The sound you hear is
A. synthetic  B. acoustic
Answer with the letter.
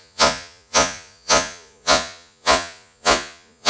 A